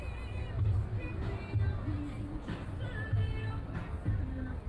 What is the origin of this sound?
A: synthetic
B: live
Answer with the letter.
B